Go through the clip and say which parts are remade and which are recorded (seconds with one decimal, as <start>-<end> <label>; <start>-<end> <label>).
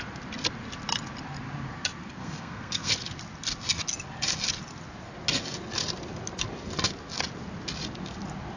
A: 0.0-2.2 recorded; 2.2-2.9 remade; 2.9-8.6 recorded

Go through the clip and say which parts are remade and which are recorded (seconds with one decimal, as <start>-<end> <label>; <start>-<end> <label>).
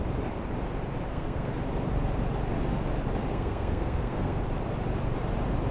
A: 0.0-1.1 recorded; 1.1-1.6 remade; 1.6-3.3 recorded; 3.3-4.4 remade; 4.4-5.7 recorded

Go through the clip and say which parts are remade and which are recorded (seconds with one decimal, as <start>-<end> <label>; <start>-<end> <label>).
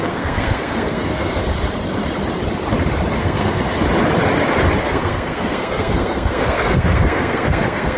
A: 0.0-1.4 remade; 1.4-3.2 recorded; 3.2-3.7 remade; 3.7-4.8 recorded; 4.8-8.0 remade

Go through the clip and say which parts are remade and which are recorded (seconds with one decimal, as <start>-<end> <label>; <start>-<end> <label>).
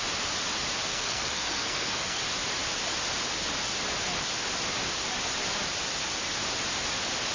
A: 0.0-0.9 recorded; 0.9-2.2 remade; 2.2-7.3 recorded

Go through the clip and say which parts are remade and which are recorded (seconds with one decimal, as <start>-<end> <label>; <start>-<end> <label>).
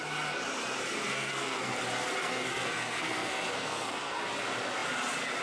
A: 0.0-1.1 recorded; 1.1-1.7 remade; 1.7-2.2 recorded; 2.2-4.2 remade; 4.2-5.4 recorded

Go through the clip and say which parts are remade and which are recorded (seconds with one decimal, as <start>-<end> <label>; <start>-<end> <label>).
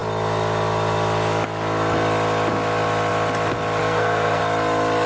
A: 0.0-3.8 recorded; 3.8-4.4 remade; 4.4-5.1 recorded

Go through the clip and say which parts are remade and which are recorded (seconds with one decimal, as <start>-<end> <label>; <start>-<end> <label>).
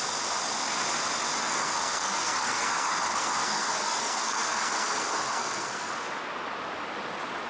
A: 0.0-1.4 recorded; 1.4-5.9 remade; 5.9-7.5 recorded